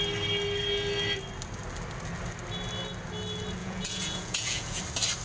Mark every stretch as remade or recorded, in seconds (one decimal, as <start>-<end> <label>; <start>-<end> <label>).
0.0-3.6 recorded; 3.6-4.8 remade; 4.8-5.2 recorded